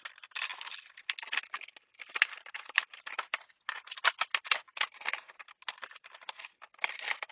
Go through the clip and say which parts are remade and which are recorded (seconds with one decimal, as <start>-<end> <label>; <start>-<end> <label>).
0.0-7.3 recorded